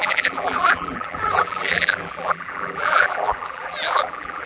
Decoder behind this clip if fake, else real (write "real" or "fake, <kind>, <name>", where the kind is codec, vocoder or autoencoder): fake, vocoder, BigVGAN v2